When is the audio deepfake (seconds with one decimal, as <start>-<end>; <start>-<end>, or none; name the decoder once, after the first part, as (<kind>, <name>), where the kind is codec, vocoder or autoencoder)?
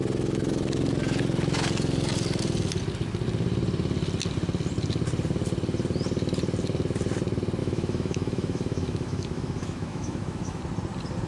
7.6-10.6 (autoencoder, DAC-VAE)